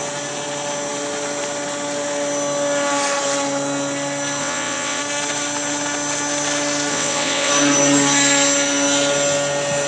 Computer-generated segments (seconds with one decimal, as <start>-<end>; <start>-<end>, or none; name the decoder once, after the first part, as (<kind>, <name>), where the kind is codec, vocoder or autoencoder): 4.4-5.0 (vocoder, WaveNeXt); 6.9-7.5